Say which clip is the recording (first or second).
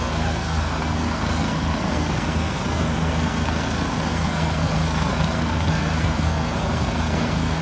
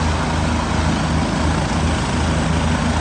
second